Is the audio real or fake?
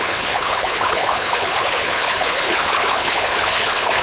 fake